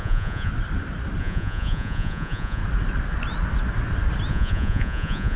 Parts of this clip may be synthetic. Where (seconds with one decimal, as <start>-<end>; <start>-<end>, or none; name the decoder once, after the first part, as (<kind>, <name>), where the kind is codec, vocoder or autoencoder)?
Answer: 0.0-0.5 (vocoder, Vocos); 1.2-2.6; 4.3-5.4